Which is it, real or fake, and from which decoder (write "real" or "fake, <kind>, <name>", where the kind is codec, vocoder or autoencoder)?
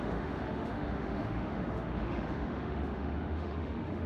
fake, autoencoder, DAC-VAE